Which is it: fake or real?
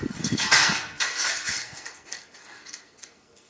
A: fake